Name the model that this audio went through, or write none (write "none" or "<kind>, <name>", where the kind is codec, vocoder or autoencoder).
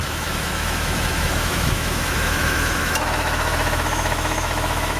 autoencoder, DAC-VAE